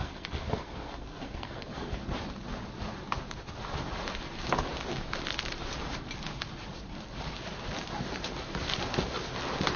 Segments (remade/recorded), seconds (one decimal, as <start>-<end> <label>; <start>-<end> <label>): 0.0-2.0 remade; 2.0-9.8 recorded